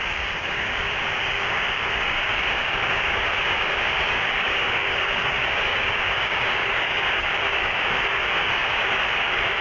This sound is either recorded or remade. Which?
remade